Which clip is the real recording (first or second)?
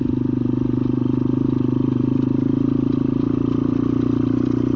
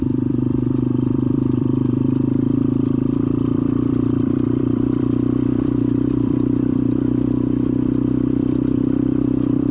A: first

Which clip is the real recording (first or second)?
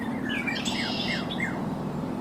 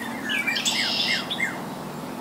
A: second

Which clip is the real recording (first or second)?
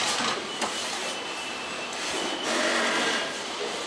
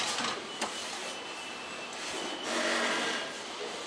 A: second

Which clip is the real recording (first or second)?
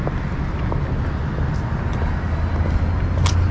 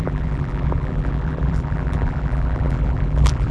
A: first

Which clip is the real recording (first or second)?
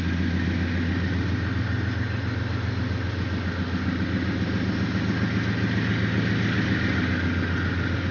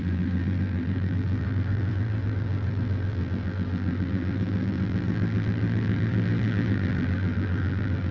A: first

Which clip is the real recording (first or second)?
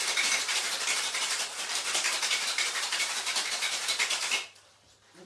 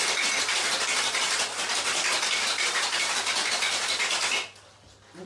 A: second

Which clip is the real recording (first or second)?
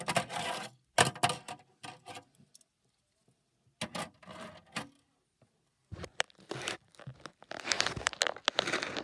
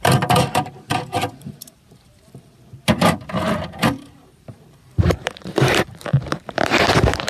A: first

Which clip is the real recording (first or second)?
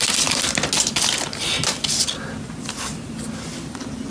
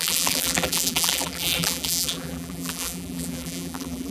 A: first